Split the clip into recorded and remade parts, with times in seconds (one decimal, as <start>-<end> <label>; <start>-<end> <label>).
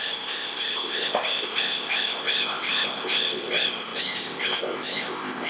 0.0-5.5 remade